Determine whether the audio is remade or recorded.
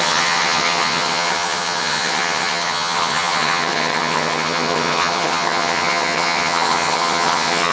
remade